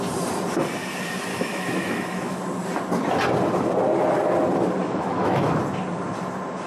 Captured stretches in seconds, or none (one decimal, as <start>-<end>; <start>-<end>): 0.0-1.3; 2.4-4.8; 5.5-6.7